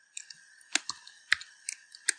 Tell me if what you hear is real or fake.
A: real